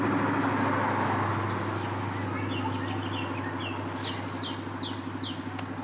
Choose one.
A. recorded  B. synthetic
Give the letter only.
A